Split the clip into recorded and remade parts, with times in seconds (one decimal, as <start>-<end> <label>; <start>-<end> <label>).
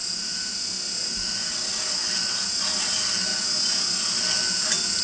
0.0-5.0 recorded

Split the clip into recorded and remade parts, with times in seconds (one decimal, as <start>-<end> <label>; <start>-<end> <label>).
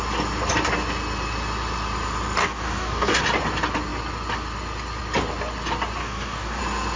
0.0-2.4 recorded; 2.4-3.2 remade; 3.2-6.0 recorded; 6.0-6.6 remade; 6.6-7.0 recorded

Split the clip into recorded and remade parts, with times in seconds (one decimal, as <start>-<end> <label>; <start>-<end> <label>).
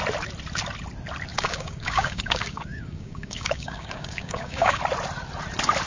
0.0-1.3 recorded; 1.3-4.8 remade; 4.8-5.9 recorded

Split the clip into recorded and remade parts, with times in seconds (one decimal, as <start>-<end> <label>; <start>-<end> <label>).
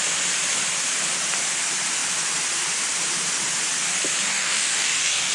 0.0-4.3 recorded; 4.3-5.3 remade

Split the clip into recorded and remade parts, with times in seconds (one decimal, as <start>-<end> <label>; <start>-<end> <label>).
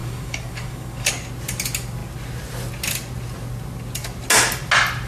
0.0-1.1 remade; 1.1-5.1 recorded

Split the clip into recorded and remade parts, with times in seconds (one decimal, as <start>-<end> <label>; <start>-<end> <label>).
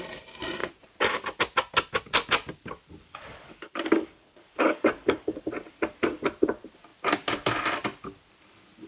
0.0-3.0 recorded; 3.0-5.5 remade; 5.5-8.9 recorded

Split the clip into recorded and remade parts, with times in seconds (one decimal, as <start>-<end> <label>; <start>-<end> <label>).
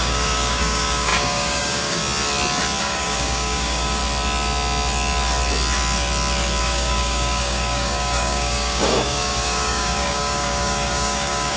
0.0-2.0 remade; 2.0-2.8 recorded; 2.8-4.0 remade; 4.0-6.6 recorded; 6.6-11.6 remade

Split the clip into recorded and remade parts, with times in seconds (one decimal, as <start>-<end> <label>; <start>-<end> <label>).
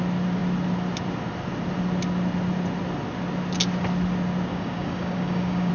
0.0-4.5 recorded; 4.5-5.7 remade